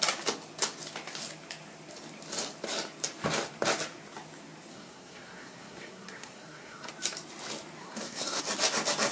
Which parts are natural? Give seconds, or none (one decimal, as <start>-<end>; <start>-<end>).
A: 0.0-4.7; 6.9-7.8; 8.4-9.1